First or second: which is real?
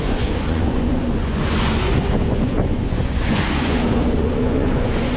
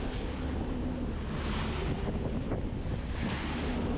second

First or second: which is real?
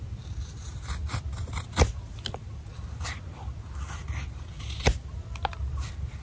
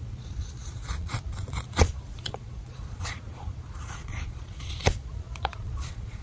first